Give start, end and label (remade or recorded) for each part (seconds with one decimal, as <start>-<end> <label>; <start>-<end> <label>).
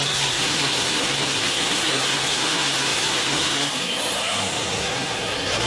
0.0-5.7 remade